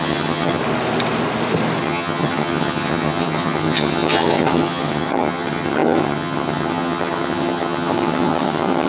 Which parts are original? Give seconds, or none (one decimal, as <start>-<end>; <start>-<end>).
0.6-1.8